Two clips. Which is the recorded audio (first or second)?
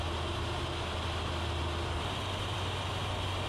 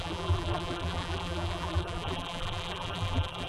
first